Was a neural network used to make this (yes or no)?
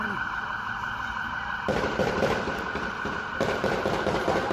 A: yes